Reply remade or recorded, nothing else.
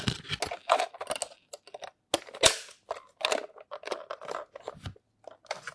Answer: recorded